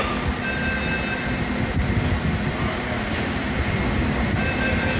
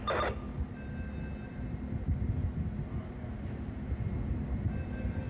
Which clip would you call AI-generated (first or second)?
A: first